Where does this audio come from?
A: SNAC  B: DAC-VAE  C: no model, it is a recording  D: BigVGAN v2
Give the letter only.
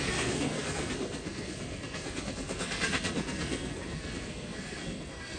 A